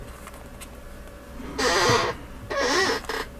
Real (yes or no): yes